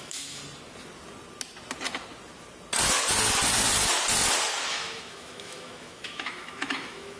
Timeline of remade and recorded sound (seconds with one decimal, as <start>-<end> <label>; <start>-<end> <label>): 0.0-0.4 remade; 0.4-4.7 recorded; 4.7-7.2 remade